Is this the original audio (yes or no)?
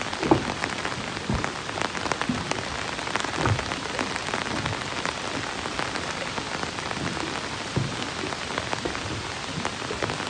yes